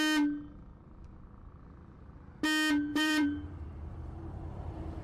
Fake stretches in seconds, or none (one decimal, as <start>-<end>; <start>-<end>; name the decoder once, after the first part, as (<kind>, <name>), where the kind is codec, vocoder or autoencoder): 2.9-5.0 (vocoder, BigVGAN v2)